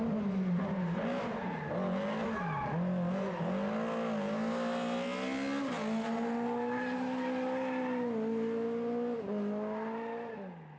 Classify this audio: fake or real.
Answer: real